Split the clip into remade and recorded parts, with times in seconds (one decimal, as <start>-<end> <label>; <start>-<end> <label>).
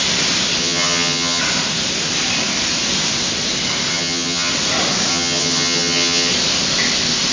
0.0-0.6 recorded; 0.6-1.4 remade; 1.4-3.9 recorded; 3.9-4.5 remade; 4.5-5.1 recorded; 5.1-6.3 remade; 6.3-7.3 recorded